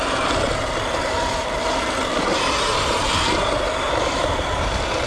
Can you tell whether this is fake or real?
real